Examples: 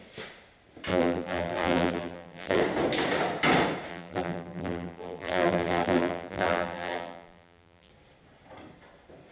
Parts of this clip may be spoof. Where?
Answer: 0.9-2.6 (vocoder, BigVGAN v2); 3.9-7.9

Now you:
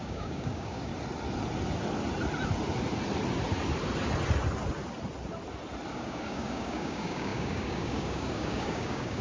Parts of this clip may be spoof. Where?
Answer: 0.0-0.9 (codec, DAC); 5.9-9.2

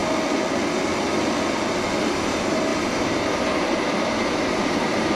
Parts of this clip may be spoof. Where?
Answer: 2.0-5.2 (vocoder, BigVGAN v2)

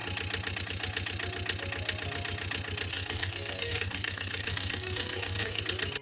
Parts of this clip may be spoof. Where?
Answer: 2.9-5.6 (codec, DAC)

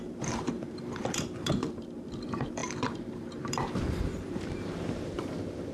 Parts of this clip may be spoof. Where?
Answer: 0.0-5.7 (vocoder, BigVGAN v2)

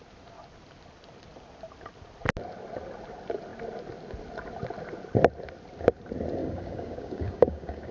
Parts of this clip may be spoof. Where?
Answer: 6.4-7.9 (codec, DAC)